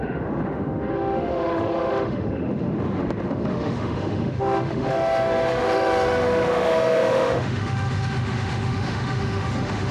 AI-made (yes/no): yes